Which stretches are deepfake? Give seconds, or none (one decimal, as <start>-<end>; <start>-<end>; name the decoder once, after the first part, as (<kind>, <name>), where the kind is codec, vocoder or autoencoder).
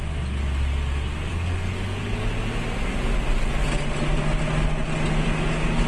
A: 1.3-2.3 (codec, DAC)